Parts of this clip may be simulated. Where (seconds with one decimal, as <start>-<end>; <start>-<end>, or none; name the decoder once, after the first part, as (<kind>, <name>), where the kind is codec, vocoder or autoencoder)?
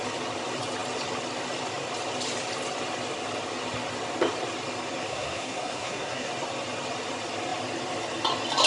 5.1-6.3 (codec, SNAC)